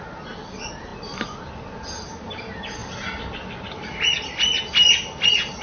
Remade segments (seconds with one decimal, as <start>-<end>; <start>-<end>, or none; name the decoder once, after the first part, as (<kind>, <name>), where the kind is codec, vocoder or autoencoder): none